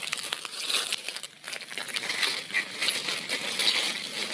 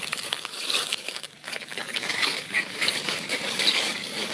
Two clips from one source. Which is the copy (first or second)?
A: second